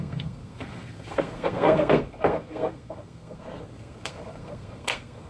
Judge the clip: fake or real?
fake